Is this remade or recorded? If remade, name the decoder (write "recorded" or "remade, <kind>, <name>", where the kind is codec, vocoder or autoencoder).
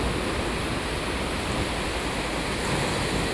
recorded